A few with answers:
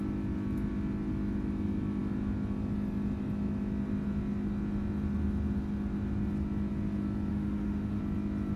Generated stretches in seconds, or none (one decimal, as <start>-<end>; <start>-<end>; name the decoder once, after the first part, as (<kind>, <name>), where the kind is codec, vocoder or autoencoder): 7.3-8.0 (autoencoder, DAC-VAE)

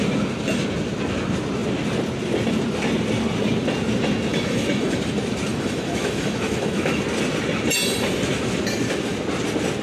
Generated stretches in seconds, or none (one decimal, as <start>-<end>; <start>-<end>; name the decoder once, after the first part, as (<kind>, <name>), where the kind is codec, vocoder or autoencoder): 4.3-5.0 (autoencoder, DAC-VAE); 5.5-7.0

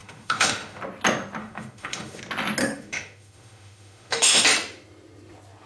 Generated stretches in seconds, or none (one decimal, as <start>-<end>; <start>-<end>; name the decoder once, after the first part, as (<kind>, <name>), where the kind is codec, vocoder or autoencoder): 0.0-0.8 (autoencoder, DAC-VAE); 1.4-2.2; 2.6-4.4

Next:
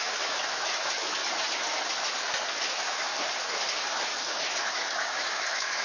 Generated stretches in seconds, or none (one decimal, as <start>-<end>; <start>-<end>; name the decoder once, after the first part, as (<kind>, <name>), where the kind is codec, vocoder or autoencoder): 0.0-1.2 (autoencoder, DAC-VAE); 2.7-3.1; 3.9-5.8

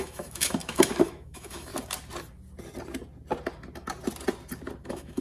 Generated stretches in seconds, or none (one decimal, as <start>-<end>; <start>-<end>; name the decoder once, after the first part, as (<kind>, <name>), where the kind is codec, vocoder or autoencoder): 0.0-1.7 (autoencoder, DAC-VAE); 4.8-5.2